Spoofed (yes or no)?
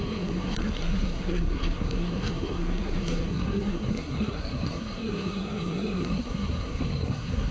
yes